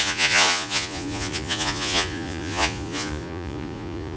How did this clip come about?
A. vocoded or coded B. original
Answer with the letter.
A